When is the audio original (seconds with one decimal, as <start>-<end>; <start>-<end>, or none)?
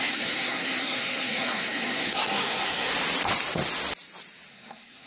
2.9-4.5